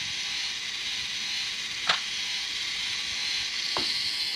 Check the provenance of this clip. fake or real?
real